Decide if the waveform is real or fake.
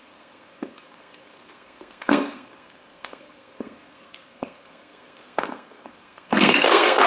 fake